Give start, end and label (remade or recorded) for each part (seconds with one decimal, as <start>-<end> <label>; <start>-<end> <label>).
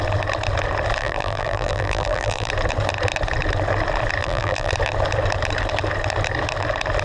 0.0-1.0 recorded; 1.0-2.5 remade; 2.5-4.2 recorded; 4.2-4.7 remade; 4.7-7.0 recorded